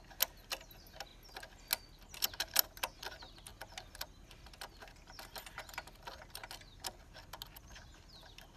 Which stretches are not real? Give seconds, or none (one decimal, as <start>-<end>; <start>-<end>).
none